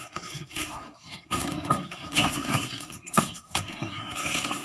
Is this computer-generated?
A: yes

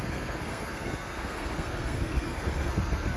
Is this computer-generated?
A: yes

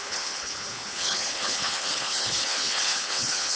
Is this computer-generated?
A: yes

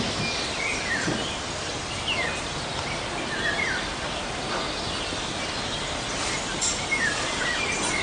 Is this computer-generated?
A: no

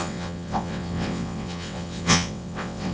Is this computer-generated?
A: yes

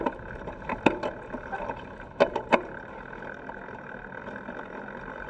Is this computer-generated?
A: no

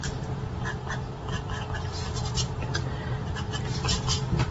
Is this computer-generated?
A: no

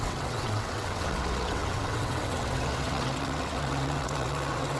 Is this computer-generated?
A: yes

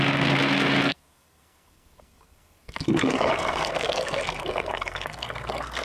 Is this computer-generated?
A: yes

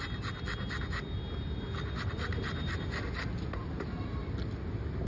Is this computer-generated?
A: no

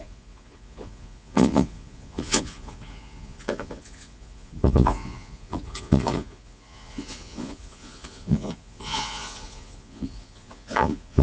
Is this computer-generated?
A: yes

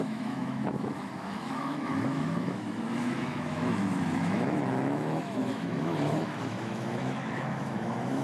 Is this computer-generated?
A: yes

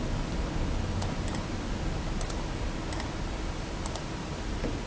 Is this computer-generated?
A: no